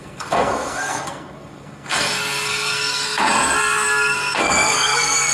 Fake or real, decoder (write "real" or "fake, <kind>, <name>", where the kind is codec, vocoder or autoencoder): fake, codec, SNAC